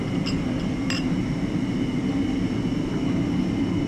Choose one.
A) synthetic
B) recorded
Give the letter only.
B